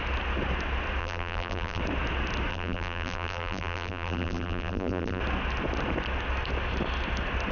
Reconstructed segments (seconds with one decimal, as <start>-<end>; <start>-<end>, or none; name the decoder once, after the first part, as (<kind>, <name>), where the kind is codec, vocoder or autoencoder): 1.0-1.8 (vocoder, BigVGAN v2); 2.5-5.2